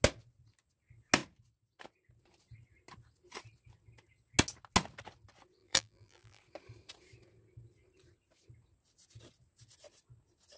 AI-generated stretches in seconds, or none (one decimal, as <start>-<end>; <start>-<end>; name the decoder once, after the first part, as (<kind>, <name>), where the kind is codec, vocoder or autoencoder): 5.6-6.4 (vocoder, BigVGAN v2)